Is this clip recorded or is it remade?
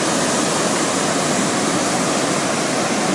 recorded